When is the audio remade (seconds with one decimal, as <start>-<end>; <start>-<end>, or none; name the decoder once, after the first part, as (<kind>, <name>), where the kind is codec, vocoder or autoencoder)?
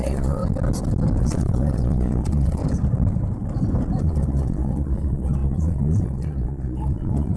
0.0-0.4 (vocoder, Vocos); 1.2-2.6; 4.0-7.4